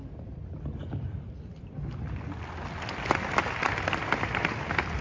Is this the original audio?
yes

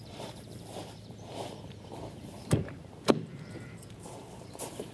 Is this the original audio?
no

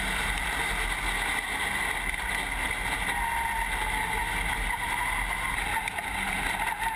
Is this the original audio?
yes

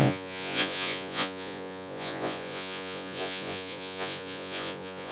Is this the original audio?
no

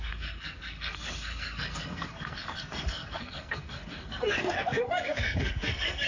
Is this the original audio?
no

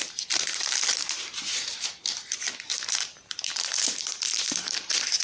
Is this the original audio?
no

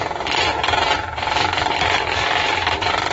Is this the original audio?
no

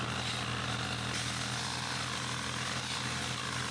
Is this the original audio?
yes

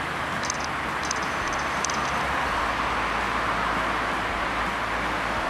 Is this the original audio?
yes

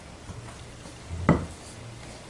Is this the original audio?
yes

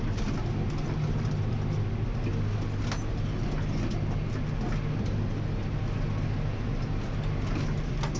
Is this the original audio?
yes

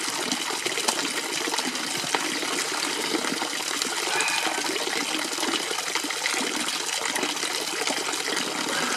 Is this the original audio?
yes